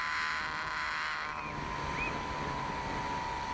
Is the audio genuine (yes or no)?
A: yes